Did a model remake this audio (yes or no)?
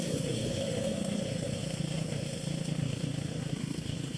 yes